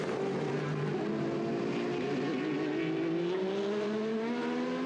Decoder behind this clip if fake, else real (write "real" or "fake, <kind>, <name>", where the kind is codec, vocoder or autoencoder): real